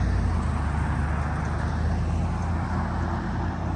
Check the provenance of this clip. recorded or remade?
recorded